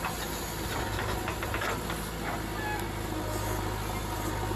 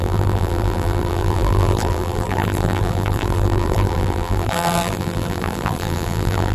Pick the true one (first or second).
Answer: first